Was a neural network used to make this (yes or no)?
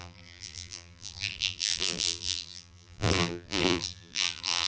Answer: yes